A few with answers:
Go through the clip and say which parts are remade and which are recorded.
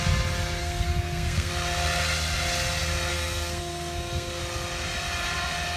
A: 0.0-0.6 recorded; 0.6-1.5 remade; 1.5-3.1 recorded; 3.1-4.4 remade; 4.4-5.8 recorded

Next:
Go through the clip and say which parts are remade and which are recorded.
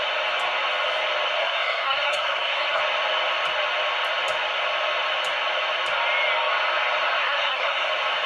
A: 0.0-1.4 recorded; 1.4-2.8 remade; 2.8-7.2 recorded; 7.2-7.9 remade; 7.9-8.3 recorded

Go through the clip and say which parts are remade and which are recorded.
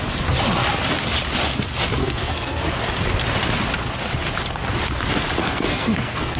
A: 0.0-2.0 recorded; 2.0-2.8 remade; 2.8-5.4 recorded; 5.4-6.4 remade